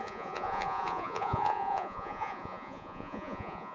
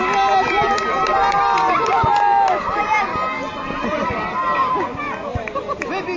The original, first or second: second